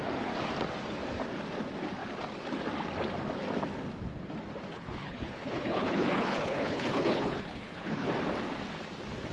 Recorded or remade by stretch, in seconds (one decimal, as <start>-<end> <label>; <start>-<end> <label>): 0.0-4.7 recorded; 4.7-8.1 remade; 8.1-9.3 recorded